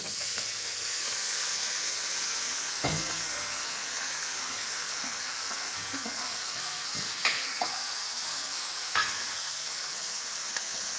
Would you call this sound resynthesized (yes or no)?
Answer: yes